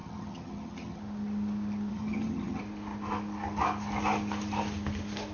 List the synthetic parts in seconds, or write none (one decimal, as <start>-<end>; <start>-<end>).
0.0-1.0; 1.9-2.6